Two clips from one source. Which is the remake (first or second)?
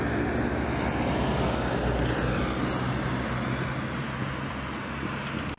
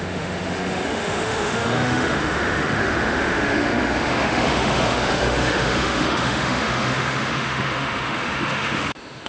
second